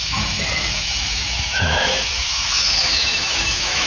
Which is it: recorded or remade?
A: remade